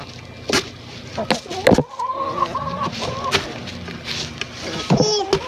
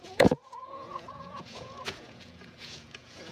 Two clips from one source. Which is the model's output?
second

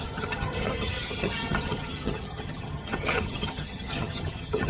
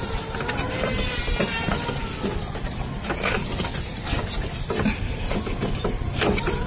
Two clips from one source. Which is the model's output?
first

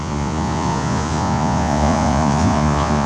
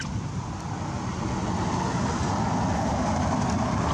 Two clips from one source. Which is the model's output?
first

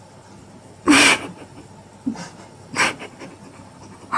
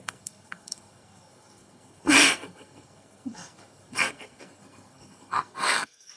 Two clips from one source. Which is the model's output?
second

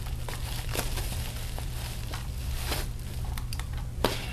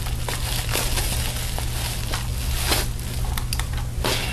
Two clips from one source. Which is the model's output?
first